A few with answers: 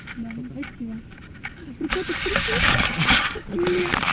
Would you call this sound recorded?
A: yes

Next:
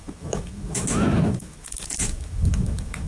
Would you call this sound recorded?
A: no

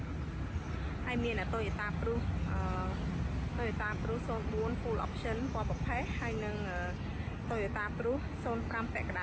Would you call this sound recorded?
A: yes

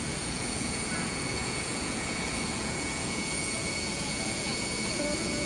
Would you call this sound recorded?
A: no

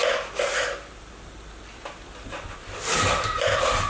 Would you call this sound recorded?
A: yes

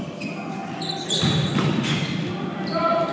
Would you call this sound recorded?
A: yes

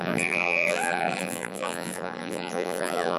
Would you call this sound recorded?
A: no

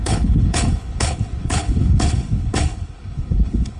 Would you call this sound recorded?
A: no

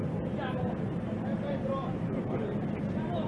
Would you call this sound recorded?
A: no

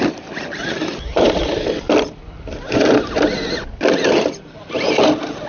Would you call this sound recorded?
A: no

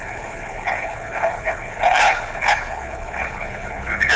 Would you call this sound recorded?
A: no